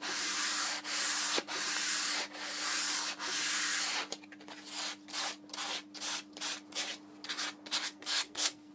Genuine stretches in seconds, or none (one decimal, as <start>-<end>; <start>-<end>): 0.0-7.8